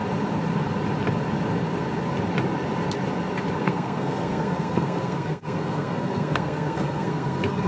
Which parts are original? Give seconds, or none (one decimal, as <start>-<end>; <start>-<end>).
0.0-3.6